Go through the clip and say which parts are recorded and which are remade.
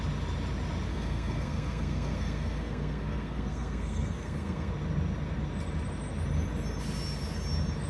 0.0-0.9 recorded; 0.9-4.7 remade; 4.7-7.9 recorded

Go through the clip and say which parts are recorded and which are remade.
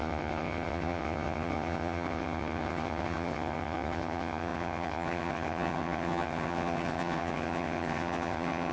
0.0-8.7 remade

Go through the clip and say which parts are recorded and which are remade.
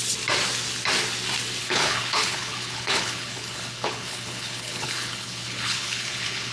0.0-1.6 recorded; 1.6-6.5 remade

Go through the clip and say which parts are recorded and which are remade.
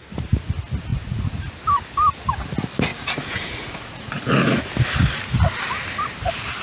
0.0-0.9 recorded; 0.9-1.5 remade; 1.5-2.9 recorded; 2.9-4.7 remade; 4.7-6.6 recorded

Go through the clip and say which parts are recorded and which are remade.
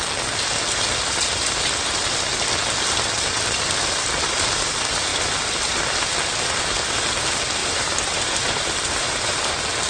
0.0-7.6 recorded; 7.6-9.5 remade; 9.5-9.9 recorded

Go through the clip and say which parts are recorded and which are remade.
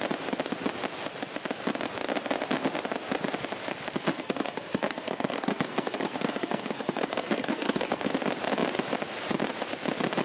0.0-4.1 recorded; 4.1-8.1 remade; 8.1-10.2 recorded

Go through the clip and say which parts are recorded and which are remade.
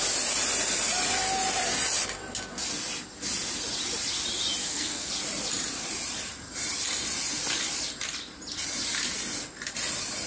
0.0-4.6 recorded; 4.6-5.1 remade; 5.1-10.3 recorded